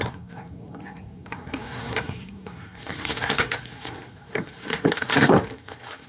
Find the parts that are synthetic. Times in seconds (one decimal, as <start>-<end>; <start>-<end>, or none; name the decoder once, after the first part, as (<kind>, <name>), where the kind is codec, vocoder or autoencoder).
0.0-6.1 (codec, SNAC)